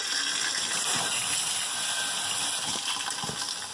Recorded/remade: recorded